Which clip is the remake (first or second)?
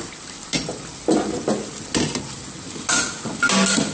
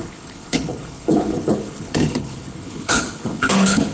second